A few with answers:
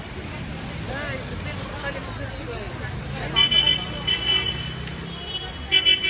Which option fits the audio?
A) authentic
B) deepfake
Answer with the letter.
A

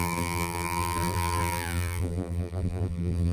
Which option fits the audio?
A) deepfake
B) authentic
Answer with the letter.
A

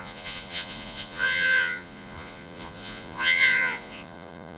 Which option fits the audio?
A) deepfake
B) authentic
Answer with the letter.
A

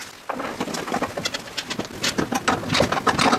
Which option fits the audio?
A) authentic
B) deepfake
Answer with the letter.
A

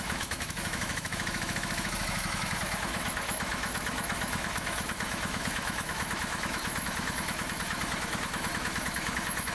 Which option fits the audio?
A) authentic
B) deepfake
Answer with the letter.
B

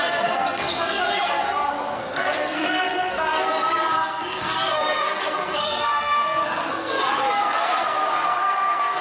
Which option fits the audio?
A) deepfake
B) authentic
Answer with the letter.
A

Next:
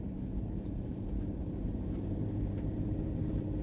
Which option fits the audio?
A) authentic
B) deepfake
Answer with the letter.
B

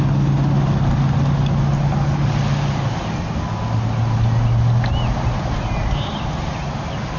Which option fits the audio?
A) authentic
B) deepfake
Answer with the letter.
A